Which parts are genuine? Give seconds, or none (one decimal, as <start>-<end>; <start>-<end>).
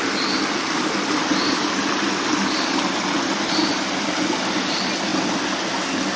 0.0-6.2